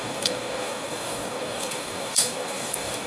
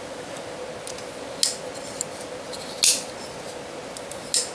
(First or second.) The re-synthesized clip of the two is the first